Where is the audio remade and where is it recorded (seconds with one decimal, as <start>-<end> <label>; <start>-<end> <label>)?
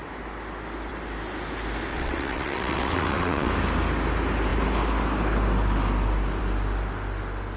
0.0-1.9 recorded; 1.9-3.5 remade; 3.5-7.6 recorded